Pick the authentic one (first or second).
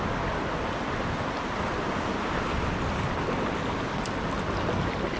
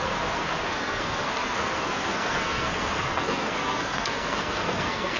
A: first